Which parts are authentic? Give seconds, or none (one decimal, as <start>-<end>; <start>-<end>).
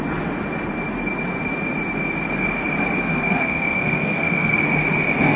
0.0-3.1; 4.6-5.4